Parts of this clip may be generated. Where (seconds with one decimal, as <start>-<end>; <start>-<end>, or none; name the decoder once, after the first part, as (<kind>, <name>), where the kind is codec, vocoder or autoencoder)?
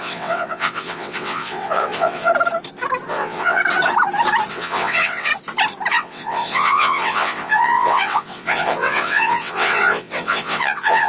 0.0-2.3 (vocoder, WaveNeXt); 3.1-3.6; 4.5-5.3; 5.9-11.1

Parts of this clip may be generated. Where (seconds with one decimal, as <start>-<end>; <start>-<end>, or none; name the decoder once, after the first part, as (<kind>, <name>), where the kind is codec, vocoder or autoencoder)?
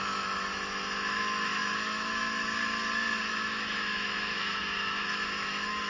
0.0-2.6 (autoencoder, DAC-VAE); 3.3-5.9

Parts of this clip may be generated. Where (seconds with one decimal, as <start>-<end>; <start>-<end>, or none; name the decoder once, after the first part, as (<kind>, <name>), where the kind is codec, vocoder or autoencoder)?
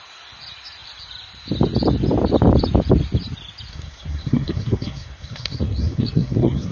3.7-6.7 (codec, SNAC)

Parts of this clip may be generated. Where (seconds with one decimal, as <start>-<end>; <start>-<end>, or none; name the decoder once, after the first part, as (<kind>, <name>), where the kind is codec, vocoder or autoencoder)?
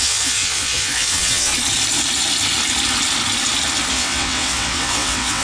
0.0-1.5 (vocoder, WaveNeXt); 3.9-5.4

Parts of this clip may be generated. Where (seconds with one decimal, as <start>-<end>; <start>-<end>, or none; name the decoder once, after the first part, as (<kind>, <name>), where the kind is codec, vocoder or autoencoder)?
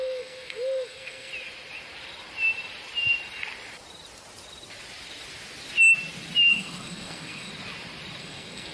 0.0-1.3 (codec, SNAC); 6.5-7.5; 8.2-8.7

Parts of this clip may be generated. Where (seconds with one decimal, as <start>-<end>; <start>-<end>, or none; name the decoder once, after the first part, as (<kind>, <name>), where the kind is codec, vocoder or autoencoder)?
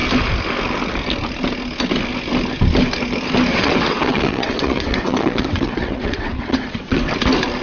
3.5-7.1 (vocoder, WaveNeXt)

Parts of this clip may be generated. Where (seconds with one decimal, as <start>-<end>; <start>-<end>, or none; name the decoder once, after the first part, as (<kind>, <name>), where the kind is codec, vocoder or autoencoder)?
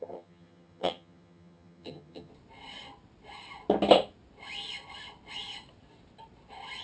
0.0-2.3 (vocoder, HiFi-GAN)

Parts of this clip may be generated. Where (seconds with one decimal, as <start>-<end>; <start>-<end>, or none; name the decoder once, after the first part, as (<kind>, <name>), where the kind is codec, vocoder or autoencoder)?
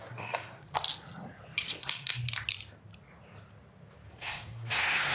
0.0-0.7 (codec, SNAC); 1.8-2.2; 4.1-5.1